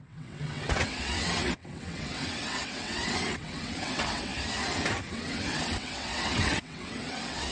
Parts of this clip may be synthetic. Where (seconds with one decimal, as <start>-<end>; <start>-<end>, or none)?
0.0-4.3; 5.1-7.5